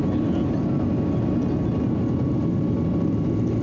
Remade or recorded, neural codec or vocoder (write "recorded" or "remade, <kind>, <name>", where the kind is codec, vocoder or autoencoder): recorded